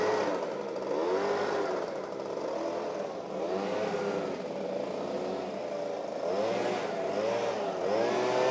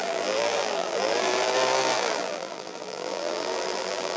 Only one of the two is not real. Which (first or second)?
second